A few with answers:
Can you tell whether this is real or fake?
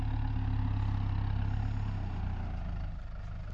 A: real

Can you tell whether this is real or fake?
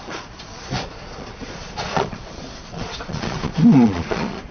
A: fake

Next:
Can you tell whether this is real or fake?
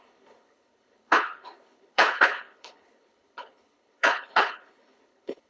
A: fake